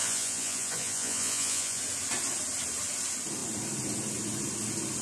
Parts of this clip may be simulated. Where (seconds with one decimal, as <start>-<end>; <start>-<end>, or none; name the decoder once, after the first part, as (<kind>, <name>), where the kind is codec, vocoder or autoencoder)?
0.0-1.8 (vocoder, Vocos)